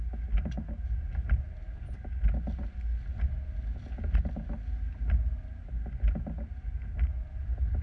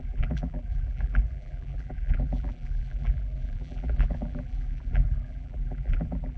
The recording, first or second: first